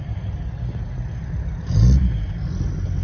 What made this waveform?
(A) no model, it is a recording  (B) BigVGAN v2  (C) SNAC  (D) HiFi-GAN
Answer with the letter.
A